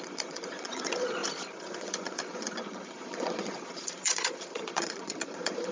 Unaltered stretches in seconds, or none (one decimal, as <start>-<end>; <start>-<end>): 1.2-1.8